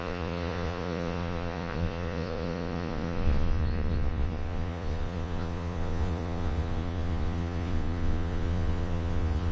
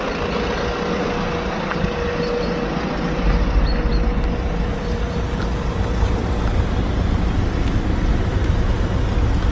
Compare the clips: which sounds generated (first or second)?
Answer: first